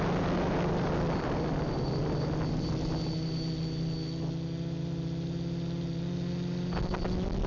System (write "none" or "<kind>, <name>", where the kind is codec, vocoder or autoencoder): none